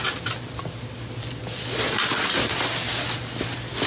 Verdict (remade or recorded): recorded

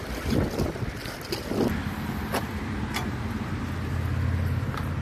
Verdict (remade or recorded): recorded